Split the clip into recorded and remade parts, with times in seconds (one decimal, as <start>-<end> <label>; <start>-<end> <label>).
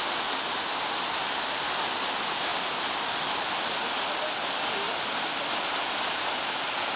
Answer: 0.0-7.0 recorded